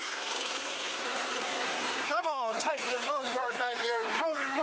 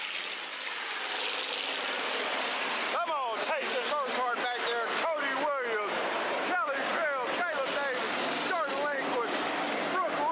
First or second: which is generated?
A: first